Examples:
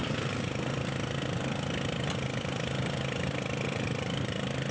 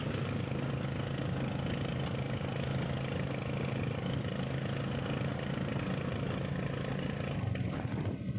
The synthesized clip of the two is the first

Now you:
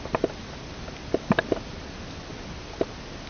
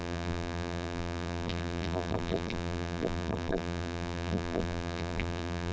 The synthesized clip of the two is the second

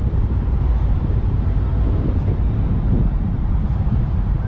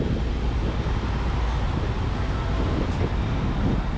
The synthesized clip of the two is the first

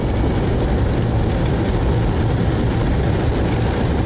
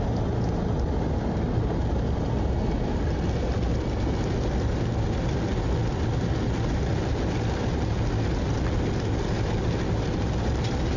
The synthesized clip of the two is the second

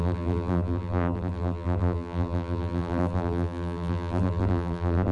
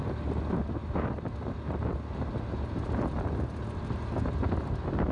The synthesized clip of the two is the first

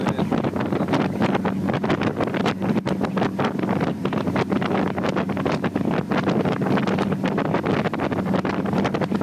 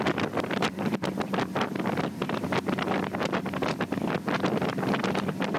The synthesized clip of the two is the second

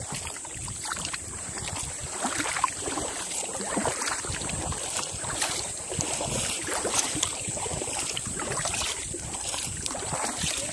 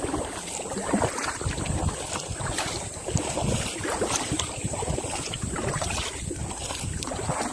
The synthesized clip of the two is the first